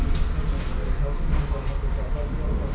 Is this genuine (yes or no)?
yes